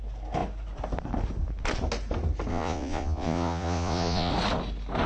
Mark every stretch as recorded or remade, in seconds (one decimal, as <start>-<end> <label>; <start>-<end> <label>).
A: 0.0-2.5 recorded; 2.5-4.3 remade; 4.3-5.1 recorded